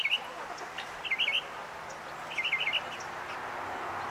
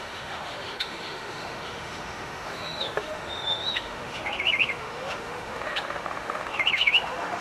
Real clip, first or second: first